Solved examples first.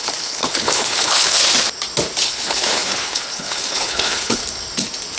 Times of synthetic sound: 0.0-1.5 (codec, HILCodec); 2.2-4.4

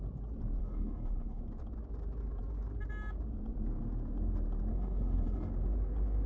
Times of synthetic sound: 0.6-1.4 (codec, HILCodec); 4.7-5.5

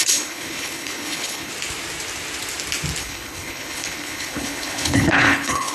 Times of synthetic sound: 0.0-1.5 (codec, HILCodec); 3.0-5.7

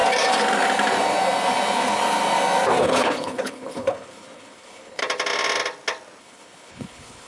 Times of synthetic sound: 2.8-5.0 (codec, HILCodec); 6.2-7.3

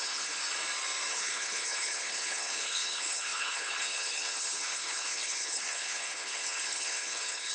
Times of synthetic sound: 0.0-0.4 (codec, HILCodec); 1.1-7.5